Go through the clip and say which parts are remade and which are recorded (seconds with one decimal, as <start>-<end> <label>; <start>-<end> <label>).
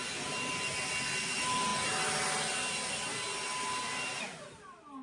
0.0-5.0 recorded